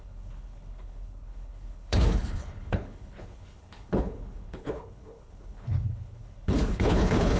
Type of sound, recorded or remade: remade